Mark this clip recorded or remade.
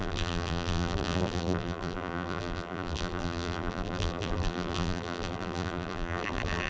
remade